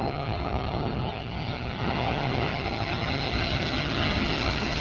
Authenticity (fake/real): fake